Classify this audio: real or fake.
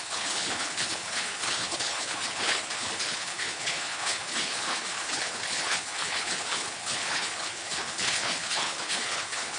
fake